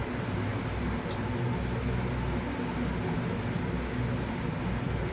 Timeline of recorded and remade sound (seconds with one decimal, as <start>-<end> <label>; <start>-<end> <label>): 0.0-5.1 recorded